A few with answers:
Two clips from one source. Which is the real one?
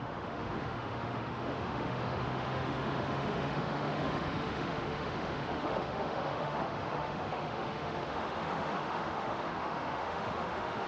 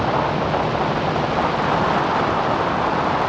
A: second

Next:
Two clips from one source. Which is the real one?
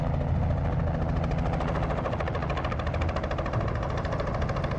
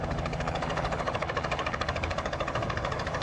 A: first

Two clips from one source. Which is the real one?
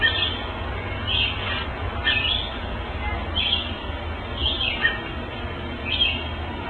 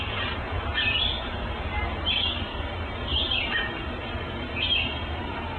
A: first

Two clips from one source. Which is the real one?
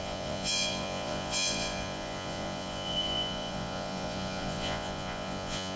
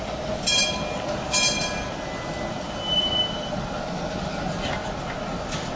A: second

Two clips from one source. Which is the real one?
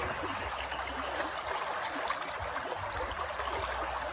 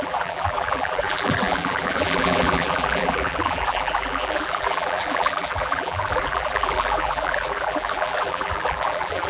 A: first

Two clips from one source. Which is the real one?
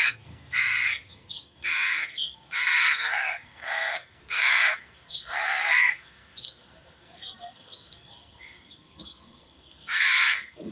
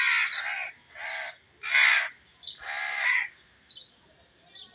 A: second